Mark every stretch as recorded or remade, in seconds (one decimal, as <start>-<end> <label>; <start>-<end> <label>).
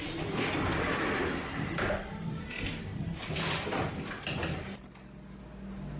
0.0-6.0 recorded